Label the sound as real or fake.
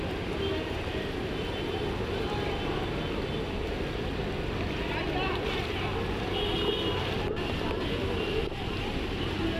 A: real